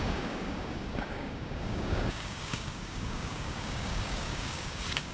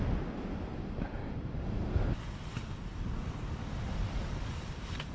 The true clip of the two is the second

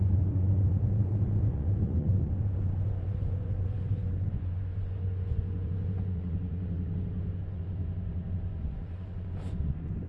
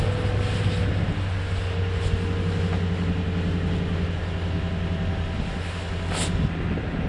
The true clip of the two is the second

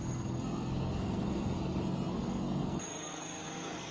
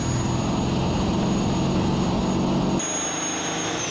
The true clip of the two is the second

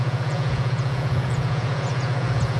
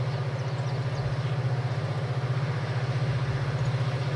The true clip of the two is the second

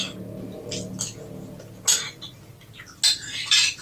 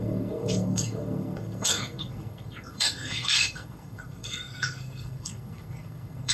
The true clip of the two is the first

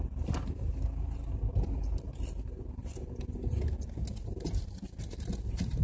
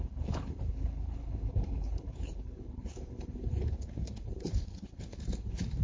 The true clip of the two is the first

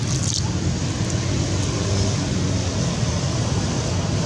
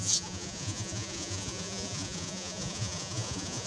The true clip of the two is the first